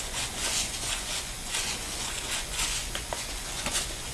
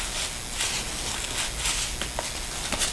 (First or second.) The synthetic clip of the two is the first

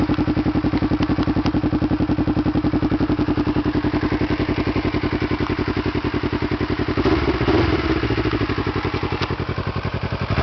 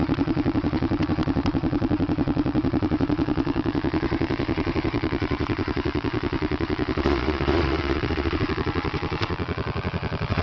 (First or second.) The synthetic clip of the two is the second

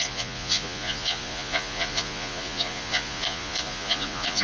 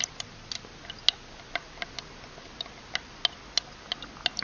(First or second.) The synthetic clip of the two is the first